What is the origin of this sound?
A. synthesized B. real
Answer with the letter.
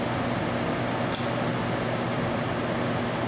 B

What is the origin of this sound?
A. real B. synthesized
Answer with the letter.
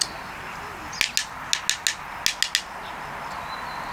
A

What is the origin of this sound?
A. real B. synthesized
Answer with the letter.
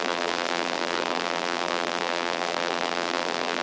B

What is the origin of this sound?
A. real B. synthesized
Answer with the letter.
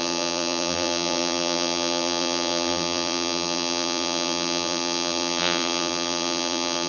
B